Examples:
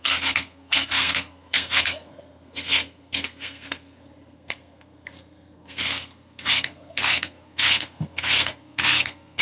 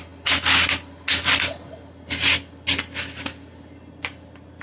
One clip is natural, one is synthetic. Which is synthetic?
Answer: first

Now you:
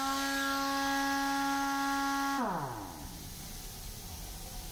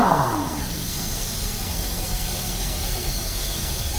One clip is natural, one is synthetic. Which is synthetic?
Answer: second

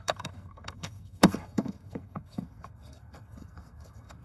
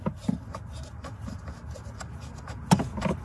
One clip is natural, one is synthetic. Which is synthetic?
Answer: first